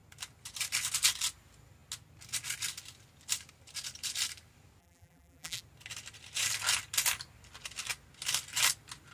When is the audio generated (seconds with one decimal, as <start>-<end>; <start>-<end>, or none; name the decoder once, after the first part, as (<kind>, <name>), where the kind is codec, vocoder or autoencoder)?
4.8-5.6 (vocoder, BigVGAN v2)